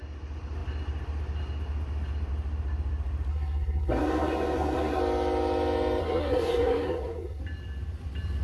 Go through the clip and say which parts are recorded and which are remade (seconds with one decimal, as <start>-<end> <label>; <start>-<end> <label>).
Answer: 0.0-3.3 recorded; 3.3-5.0 remade; 5.0-6.0 recorded; 6.0-7.4 remade; 7.4-8.4 recorded